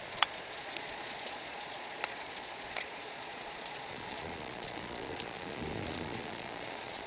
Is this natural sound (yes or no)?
no